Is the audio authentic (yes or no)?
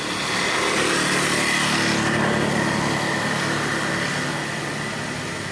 yes